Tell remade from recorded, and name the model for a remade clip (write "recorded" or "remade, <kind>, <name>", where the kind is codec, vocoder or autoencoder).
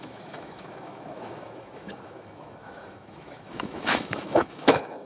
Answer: remade, autoencoder, DAC-VAE